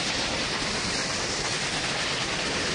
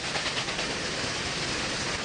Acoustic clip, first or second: second